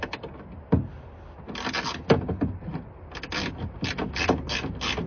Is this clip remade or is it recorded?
recorded